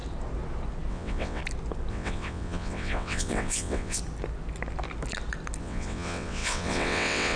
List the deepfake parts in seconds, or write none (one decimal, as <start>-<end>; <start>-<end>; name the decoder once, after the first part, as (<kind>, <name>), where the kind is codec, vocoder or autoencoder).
0.9-1.4 (vocoder, WaveNeXt); 1.9-4.0; 5.6-7.4